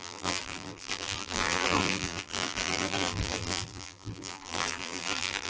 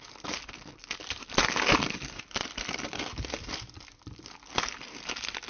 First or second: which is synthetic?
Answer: first